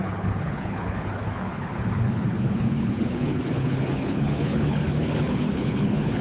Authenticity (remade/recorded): remade